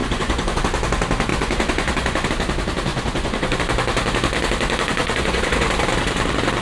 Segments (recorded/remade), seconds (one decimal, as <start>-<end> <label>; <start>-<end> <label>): 0.0-0.6 remade; 0.6-1.3 recorded; 1.3-2.3 remade; 2.3-2.9 recorded; 2.9-3.6 remade; 3.6-5.0 recorded; 5.0-5.7 remade; 5.7-6.6 recorded